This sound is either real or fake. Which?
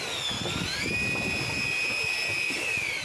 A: real